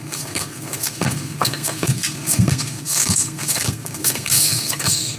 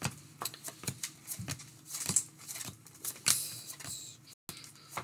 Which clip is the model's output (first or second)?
first